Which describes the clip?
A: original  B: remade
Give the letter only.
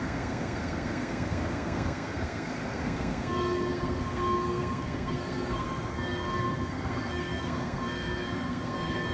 B